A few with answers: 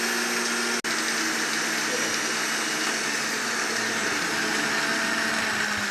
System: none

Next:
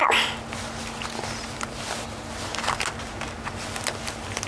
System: none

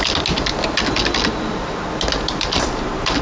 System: none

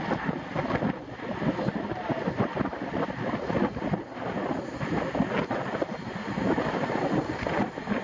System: none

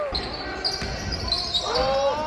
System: none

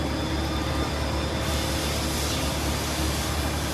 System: none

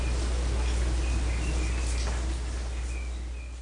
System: none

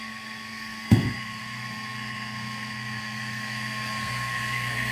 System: codec, SNAC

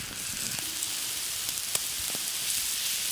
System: none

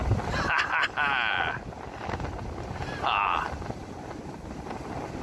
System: none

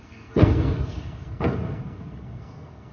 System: codec, SNAC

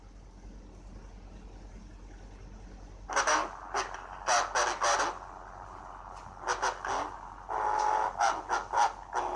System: none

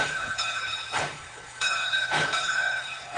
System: codec, HILCodec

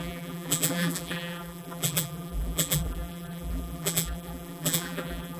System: vocoder, BigVGAN v2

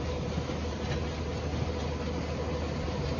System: none